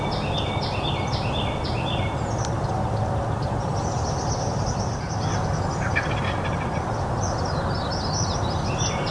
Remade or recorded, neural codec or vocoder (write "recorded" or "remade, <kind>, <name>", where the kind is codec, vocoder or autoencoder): recorded